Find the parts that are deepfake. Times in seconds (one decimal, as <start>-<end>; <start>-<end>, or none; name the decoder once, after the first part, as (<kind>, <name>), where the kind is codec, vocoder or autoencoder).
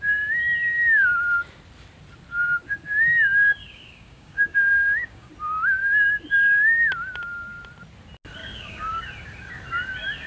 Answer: 3.6-5.3 (codec, DAC); 8.4-9.0